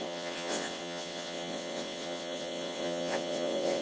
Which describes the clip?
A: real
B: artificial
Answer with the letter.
B